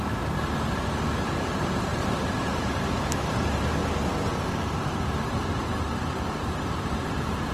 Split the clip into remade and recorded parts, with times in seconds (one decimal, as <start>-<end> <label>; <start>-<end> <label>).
0.0-3.8 remade; 3.8-4.8 recorded; 4.8-7.5 remade

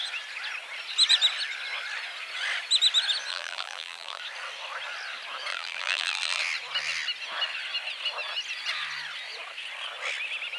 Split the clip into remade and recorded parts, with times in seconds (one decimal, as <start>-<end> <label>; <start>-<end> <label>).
0.0-3.3 recorded; 3.3-4.2 remade; 4.2-5.5 recorded; 5.5-6.4 remade; 6.4-10.6 recorded